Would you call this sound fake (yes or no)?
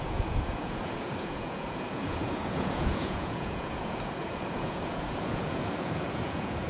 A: yes